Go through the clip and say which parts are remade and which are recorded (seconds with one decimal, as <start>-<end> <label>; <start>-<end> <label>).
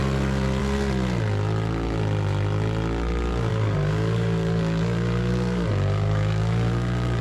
0.0-3.5 recorded; 3.5-7.2 remade